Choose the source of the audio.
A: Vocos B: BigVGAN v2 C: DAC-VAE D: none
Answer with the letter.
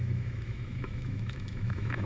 C